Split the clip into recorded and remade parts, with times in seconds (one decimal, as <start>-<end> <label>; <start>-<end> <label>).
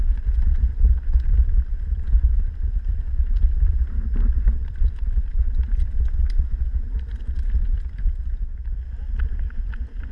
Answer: 0.0-5.9 remade; 5.9-6.7 recorded; 6.7-8.5 remade; 8.5-9.4 recorded; 9.4-10.1 remade